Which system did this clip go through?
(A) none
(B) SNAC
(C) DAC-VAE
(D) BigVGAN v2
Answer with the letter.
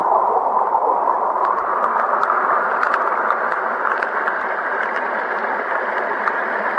A